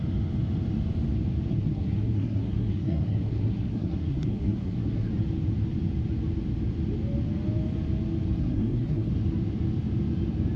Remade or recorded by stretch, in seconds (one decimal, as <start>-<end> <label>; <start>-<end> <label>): 0.0-1.5 recorded; 1.5-5.1 remade; 5.1-8.4 recorded; 8.4-9.1 remade; 9.1-10.6 recorded

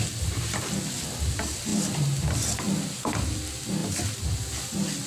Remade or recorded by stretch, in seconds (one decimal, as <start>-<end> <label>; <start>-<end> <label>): 0.0-1.7 recorded; 1.7-2.6 remade; 2.6-3.8 recorded; 3.8-5.1 remade

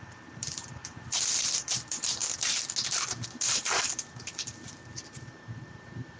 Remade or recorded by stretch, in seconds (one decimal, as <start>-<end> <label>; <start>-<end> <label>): 0.0-2.2 remade; 2.2-3.3 recorded; 3.3-6.2 remade

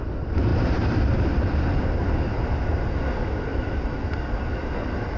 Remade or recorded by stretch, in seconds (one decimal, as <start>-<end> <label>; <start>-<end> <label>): 0.0-0.5 recorded; 0.5-1.8 remade; 1.8-3.5 recorded; 3.5-4.3 remade; 4.3-5.2 recorded

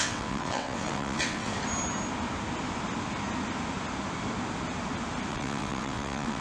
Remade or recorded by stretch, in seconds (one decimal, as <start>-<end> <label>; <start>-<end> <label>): 0.0-1.5 remade; 1.5-5.3 recorded; 5.3-6.4 remade

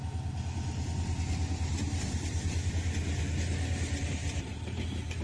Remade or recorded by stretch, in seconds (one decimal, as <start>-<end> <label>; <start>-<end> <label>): 0.0-1.8 recorded; 1.8-2.7 remade; 2.7-4.2 recorded; 4.2-5.2 remade

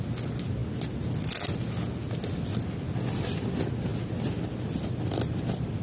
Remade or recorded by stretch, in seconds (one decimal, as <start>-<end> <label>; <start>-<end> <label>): 0.0-5.8 recorded

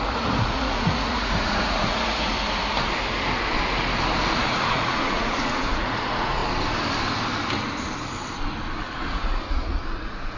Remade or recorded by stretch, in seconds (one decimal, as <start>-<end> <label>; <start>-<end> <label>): 0.0-2.3 remade; 2.3-4.3 recorded; 4.3-6.4 remade; 6.4-8.8 recorded; 8.8-10.4 remade